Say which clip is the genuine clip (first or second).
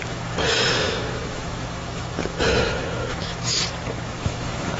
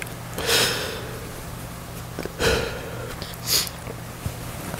second